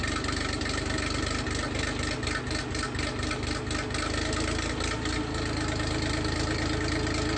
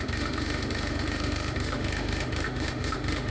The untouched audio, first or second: first